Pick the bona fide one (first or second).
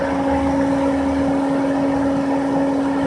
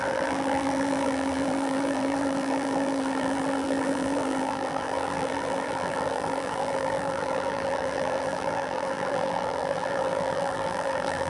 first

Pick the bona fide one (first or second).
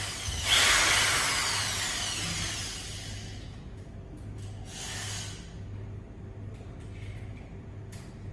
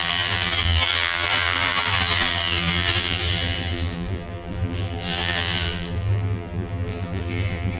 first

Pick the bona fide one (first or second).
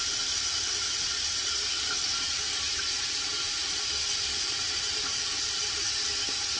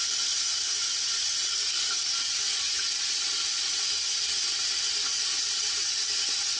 second